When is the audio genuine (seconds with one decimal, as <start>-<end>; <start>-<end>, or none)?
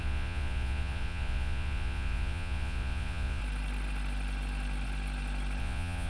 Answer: 3.4-5.6